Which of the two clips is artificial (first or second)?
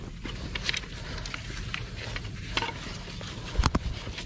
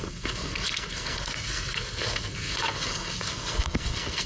second